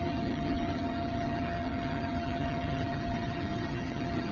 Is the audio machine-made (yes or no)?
yes